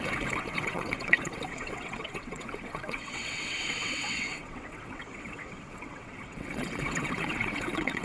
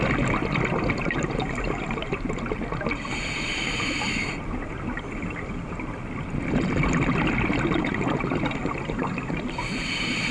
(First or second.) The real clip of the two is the second